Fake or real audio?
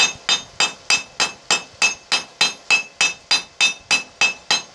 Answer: real